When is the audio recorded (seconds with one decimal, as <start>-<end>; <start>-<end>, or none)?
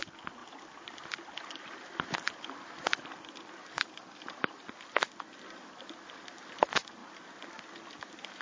0.0-8.4